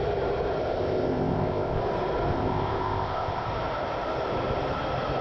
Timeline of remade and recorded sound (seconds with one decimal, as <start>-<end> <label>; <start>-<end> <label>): 0.0-0.6 recorded; 0.6-1.8 remade; 1.8-2.3 recorded; 2.3-3.5 remade; 3.5-5.2 recorded